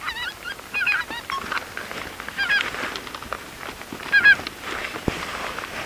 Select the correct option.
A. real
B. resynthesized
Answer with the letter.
A